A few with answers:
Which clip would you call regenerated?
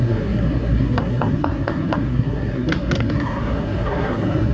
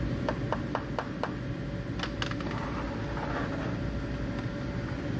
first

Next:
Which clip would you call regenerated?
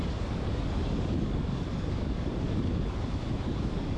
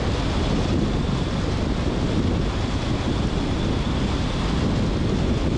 first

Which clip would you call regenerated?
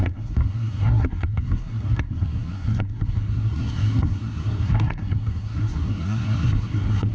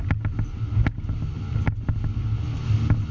first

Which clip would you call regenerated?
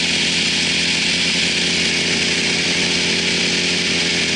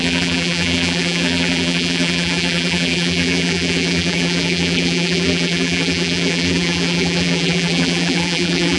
second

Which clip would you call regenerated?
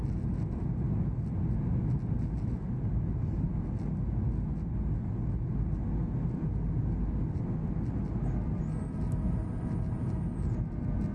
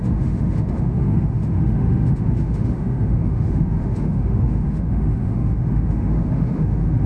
second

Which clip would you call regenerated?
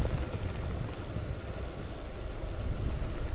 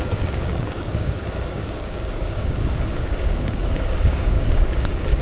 second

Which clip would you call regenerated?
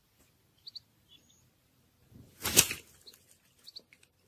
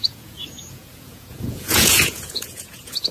second